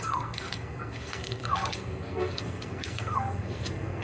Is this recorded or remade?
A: remade